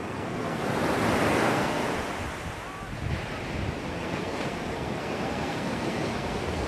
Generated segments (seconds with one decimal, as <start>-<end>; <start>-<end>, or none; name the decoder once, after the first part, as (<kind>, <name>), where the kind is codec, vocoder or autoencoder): 0.0-0.6 (codec, SNAC); 1.3-1.8; 3.9-6.7